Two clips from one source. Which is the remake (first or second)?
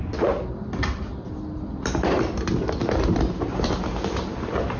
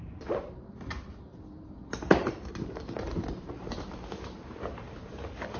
second